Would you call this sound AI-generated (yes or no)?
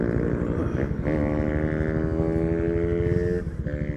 no